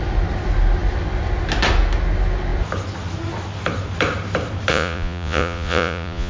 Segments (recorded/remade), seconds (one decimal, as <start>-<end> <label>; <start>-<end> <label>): 0.0-4.7 recorded; 4.7-6.3 remade

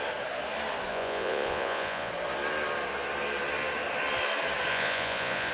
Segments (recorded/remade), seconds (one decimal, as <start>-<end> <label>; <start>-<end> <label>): 0.0-0.9 recorded; 0.9-2.1 remade; 2.1-4.7 recorded; 4.7-5.5 remade

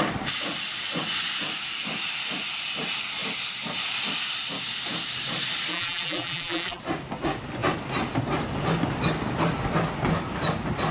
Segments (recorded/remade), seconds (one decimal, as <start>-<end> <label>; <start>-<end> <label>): 0.0-5.7 recorded; 5.7-6.8 remade; 6.8-10.9 recorded

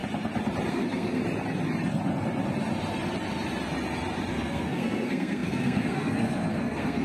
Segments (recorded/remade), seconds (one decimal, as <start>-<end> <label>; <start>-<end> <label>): 0.0-0.7 recorded; 0.7-1.2 remade; 1.2-4.3 recorded; 4.3-7.0 remade

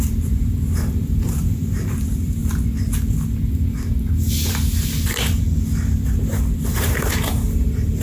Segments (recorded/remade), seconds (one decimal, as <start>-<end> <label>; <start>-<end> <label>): 0.0-2.4 remade; 2.4-6.7 recorded; 6.7-8.0 remade